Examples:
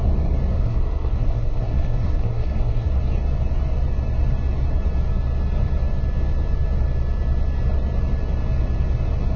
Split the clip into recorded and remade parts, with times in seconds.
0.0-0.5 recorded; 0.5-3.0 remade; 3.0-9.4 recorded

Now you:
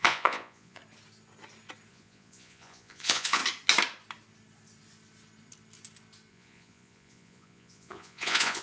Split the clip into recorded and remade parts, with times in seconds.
0.0-0.8 remade; 0.8-1.9 recorded; 1.9-3.4 remade; 3.4-6.3 recorded; 6.3-8.6 remade

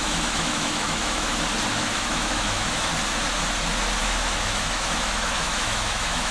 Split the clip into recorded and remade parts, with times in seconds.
0.0-1.3 remade; 1.3-1.9 recorded; 1.9-2.9 remade; 2.9-4.0 recorded; 4.0-6.3 remade

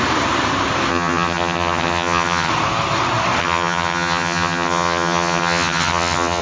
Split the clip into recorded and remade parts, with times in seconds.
0.0-0.9 recorded; 0.9-2.5 remade; 2.5-3.4 recorded; 3.4-6.4 remade

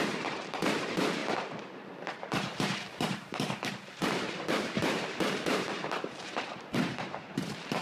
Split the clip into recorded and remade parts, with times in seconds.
0.0-7.8 remade

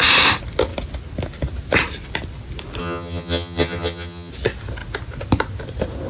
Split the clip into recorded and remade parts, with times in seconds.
0.0-2.8 recorded; 2.8-4.3 remade; 4.3-6.1 recorded

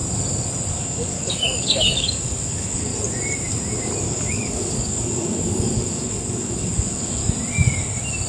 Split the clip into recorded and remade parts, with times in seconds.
0.0-0.7 recorded; 0.7-2.9 remade; 2.9-4.0 recorded; 4.0-7.2 remade; 7.2-8.3 recorded